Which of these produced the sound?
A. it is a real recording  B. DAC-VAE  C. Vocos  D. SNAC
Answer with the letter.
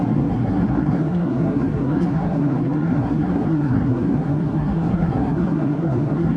D